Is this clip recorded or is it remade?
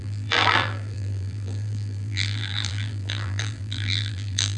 remade